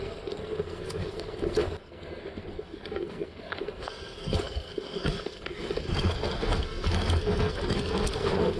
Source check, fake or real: fake